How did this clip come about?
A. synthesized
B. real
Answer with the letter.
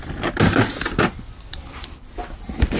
B